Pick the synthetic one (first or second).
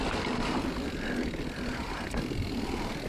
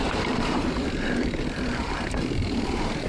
second